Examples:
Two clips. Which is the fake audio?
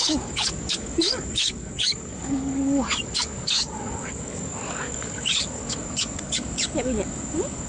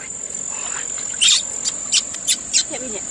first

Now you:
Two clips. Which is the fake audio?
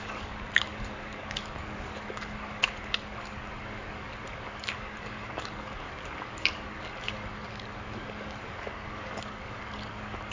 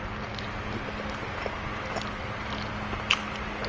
first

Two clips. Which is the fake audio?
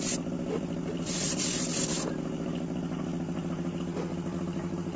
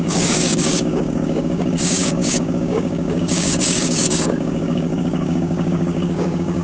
second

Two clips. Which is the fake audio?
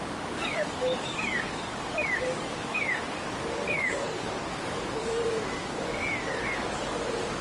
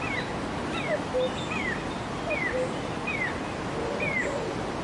first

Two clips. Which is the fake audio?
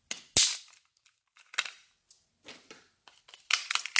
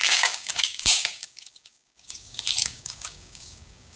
second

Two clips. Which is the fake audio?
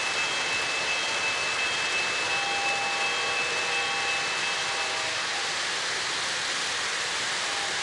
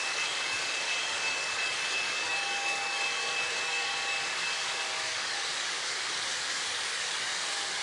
second